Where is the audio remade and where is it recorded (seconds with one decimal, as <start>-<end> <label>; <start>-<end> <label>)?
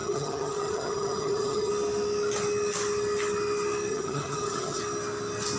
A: 0.0-1.7 remade; 1.7-3.9 recorded; 3.9-4.8 remade; 4.8-5.6 recorded